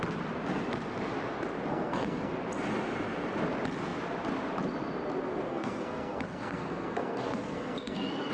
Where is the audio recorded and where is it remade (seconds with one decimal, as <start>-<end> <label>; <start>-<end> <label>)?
0.0-1.7 recorded; 1.7-2.3 remade; 2.3-5.5 recorded; 5.5-8.3 remade

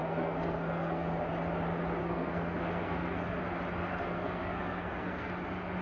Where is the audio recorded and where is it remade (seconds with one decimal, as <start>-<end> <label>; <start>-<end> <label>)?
0.0-1.3 remade; 1.3-2.0 recorded; 2.0-3.4 remade; 3.4-3.9 recorded; 3.9-5.3 remade; 5.3-5.8 recorded

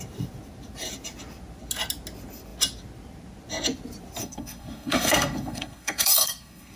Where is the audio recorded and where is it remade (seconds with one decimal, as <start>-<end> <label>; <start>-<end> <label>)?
0.0-4.2 recorded; 4.2-6.8 remade

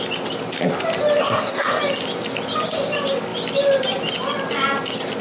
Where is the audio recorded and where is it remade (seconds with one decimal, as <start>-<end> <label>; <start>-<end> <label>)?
0.0-1.2 recorded; 1.2-1.8 remade; 1.8-5.2 recorded

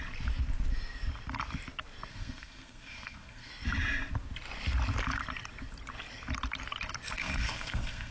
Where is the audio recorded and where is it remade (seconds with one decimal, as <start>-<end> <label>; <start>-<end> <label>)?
0.0-2.1 recorded; 2.1-3.5 remade; 3.5-7.2 recorded; 7.2-8.1 remade

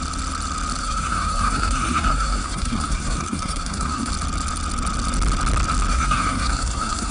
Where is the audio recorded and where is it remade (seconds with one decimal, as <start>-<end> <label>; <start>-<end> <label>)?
0.0-0.8 recorded; 0.8-4.1 remade; 4.1-5.9 recorded; 5.9-7.1 remade